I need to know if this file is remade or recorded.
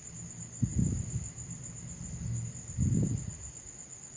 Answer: recorded